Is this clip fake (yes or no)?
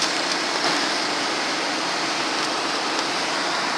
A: no